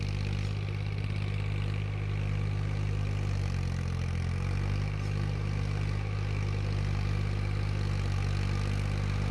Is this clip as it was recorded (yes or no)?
yes